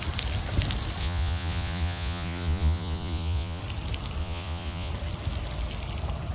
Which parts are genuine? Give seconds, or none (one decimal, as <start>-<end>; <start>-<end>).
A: 0.0-1.0; 3.6-4.2; 4.9-6.3